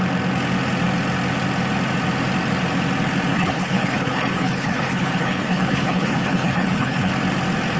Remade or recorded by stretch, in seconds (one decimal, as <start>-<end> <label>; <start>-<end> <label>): 0.0-3.3 recorded; 3.3-7.1 remade; 7.1-7.8 recorded